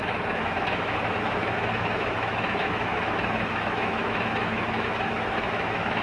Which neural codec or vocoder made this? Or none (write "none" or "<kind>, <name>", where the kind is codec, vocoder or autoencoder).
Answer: autoencoder, DAC-VAE